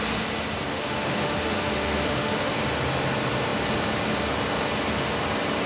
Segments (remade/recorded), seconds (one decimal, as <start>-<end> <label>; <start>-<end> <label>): 0.0-0.7 recorded; 0.7-2.5 remade; 2.5-5.7 recorded